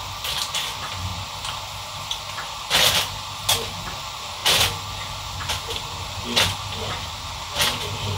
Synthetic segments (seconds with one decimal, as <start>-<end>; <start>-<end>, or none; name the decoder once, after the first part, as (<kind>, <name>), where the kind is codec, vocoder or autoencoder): none